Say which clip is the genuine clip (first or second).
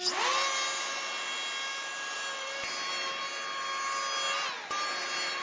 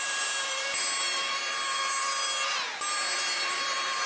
first